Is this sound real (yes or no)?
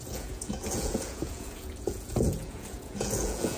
no